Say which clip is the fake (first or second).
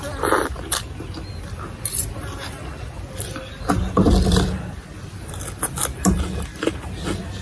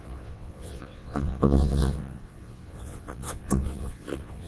second